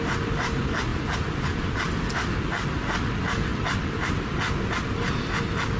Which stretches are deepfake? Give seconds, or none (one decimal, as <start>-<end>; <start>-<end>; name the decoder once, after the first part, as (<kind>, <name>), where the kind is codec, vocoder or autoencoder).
none